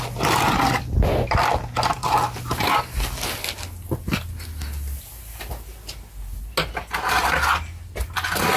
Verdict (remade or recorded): recorded